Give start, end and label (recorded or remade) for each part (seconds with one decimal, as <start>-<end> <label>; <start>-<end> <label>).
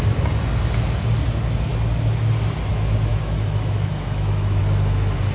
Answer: 0.0-3.1 recorded; 3.1-4.6 remade; 4.6-5.3 recorded